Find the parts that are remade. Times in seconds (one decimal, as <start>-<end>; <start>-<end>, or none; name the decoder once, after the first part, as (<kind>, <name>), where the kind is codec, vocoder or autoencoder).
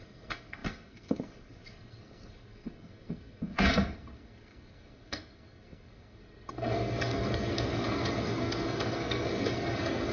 0.0-10.1 (codec, SNAC)